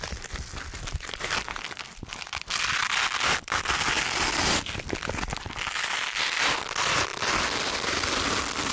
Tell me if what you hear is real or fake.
real